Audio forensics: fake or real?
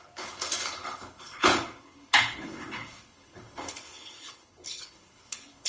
fake